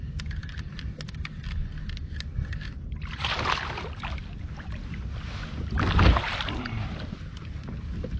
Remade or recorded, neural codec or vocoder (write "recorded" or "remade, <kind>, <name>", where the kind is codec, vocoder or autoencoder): recorded